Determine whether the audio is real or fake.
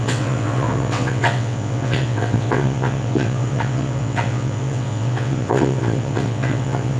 fake